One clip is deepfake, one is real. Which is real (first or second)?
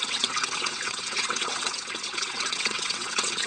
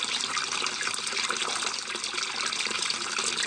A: second